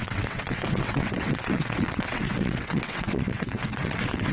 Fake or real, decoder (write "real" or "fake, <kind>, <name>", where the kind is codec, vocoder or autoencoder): fake, vocoder, WaveNeXt